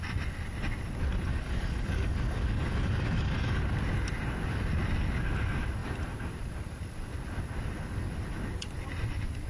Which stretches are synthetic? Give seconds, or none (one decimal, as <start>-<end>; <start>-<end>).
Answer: 1.3-3.6